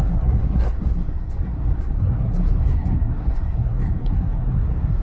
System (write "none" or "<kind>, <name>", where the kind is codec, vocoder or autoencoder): codec, SNAC